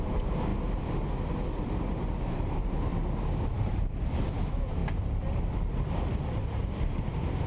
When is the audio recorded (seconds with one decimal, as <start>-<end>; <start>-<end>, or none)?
0.5-1.5; 2.9-3.5; 4.8-6.2